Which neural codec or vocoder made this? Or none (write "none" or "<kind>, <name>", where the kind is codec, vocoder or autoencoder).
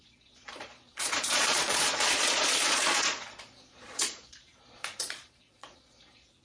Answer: vocoder, Vocos